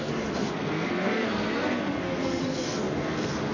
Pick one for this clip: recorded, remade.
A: remade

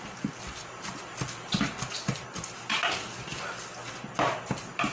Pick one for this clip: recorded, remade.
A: recorded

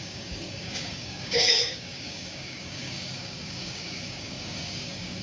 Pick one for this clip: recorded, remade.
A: remade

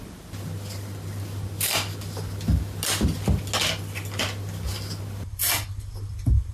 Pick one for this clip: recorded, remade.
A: recorded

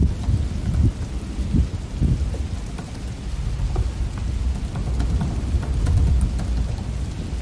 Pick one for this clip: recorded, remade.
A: recorded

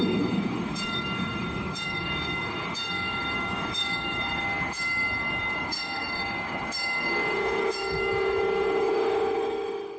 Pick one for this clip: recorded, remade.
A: remade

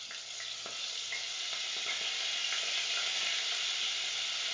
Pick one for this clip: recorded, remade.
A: recorded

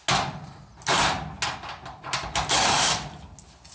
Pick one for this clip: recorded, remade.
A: recorded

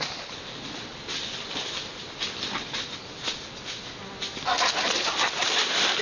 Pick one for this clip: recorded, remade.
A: recorded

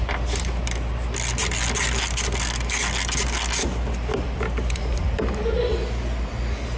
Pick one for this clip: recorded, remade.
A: recorded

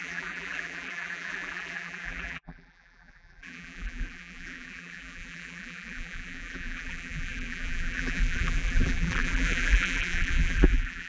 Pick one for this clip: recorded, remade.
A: remade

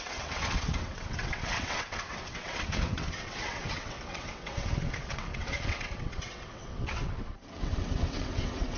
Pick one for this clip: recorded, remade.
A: remade